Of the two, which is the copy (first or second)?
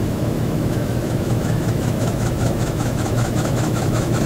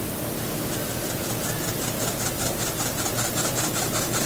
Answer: first